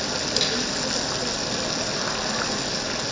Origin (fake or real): real